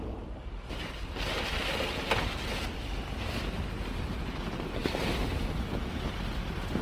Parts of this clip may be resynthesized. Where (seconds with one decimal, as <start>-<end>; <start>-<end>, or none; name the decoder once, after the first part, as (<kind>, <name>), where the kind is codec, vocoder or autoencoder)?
none